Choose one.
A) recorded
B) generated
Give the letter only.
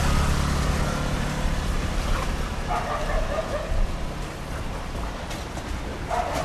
A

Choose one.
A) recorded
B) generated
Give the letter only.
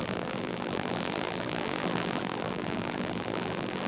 B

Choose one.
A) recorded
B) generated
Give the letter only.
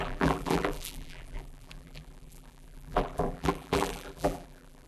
B